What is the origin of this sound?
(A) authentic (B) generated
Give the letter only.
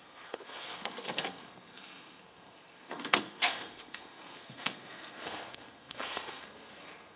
B